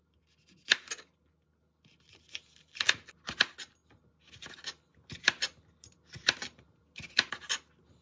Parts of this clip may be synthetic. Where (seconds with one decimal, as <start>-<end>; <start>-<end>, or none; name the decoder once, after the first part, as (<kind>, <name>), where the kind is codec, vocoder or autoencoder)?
none